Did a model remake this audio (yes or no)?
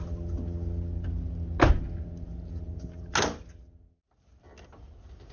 no